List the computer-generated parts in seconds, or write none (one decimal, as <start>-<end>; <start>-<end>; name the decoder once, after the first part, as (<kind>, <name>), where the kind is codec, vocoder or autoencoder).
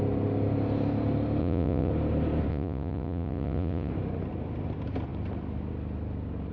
1.4-1.9 (vocoder, Vocos); 2.5-3.9